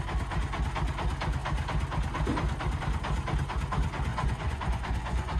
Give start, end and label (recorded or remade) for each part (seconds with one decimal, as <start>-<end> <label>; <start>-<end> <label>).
0.0-4.1 recorded; 4.1-5.4 remade

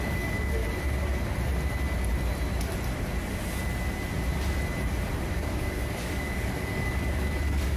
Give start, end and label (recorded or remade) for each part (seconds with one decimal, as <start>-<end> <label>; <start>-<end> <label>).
0.0-0.6 remade; 0.6-5.3 recorded; 5.3-7.8 remade